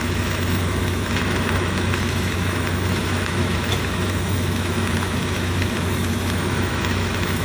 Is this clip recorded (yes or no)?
no